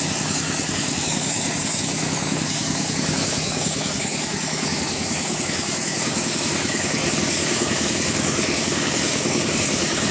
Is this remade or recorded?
remade